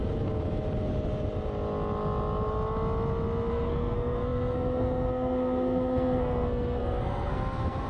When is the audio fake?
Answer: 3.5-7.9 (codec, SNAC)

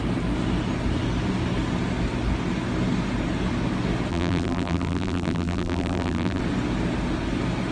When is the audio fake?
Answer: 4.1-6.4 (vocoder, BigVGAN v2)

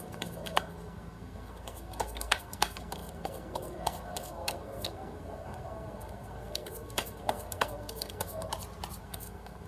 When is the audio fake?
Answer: 0.0-8.5 (codec, SNAC); 9.0-9.7

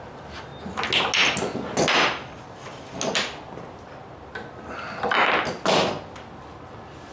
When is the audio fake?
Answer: none